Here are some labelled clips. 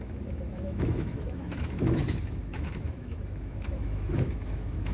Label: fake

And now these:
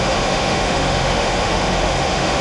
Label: fake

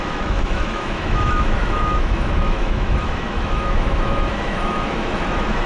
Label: fake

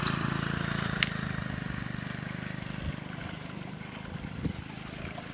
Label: real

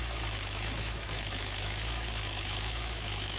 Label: fake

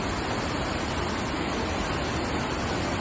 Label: real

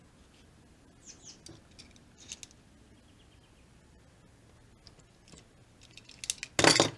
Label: real